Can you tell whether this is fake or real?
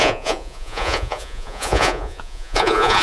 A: fake